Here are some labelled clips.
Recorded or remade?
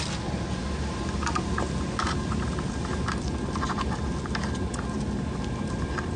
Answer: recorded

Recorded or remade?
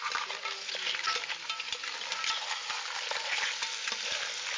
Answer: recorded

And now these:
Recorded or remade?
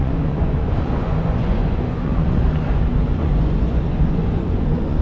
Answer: remade